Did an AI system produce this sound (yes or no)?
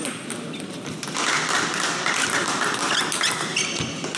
no